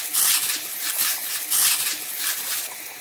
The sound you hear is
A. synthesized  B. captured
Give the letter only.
B